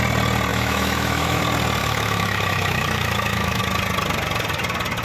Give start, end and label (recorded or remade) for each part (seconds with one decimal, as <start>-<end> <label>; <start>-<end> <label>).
0.0-0.5 recorded; 0.5-1.4 remade; 1.4-1.8 recorded; 1.8-3.6 remade; 3.6-5.0 recorded